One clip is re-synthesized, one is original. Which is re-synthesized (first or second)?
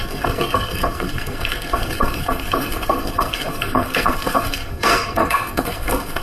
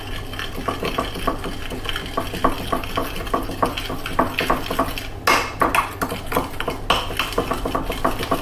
first